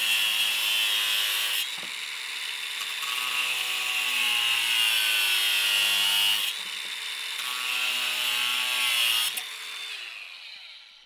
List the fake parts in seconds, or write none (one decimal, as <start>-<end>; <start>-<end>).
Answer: none

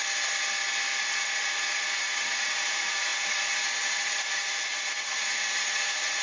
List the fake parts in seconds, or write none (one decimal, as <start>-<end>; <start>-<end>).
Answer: 1.0-6.2

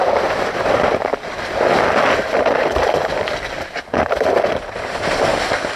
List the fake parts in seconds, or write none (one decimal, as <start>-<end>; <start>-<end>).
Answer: 0.0-1.1; 4.6-5.3

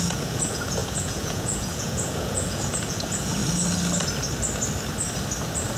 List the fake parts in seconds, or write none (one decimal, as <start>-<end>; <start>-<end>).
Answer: 0.0-3.4

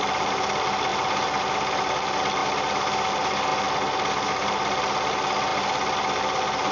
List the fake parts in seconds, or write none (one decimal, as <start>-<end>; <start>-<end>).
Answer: 0.9-1.4; 2.4-3.1

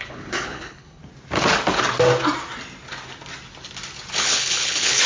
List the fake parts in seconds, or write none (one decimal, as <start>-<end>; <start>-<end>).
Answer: 0.0-1.0; 4.1-5.1

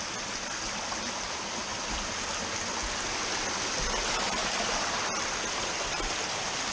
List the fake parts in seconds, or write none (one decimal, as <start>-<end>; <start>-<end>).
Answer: none